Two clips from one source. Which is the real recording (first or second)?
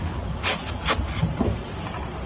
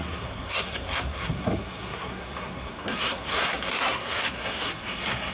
first